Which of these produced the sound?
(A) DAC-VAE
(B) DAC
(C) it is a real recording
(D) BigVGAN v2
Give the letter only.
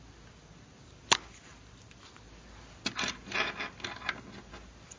C